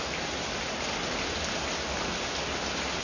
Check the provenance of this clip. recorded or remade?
recorded